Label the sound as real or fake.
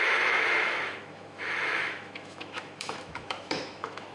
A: fake